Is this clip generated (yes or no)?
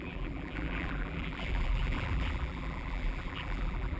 yes